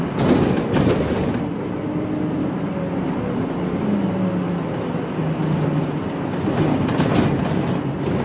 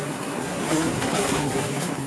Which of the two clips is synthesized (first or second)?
second